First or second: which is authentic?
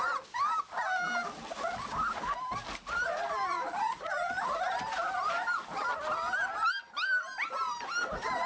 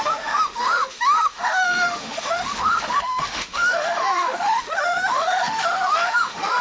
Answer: first